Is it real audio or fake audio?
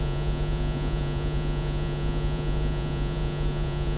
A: fake